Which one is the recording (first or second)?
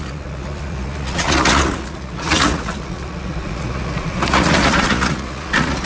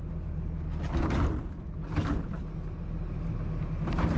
second